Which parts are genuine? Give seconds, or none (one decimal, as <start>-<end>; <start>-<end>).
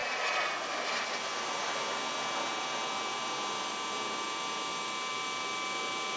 0.0-6.2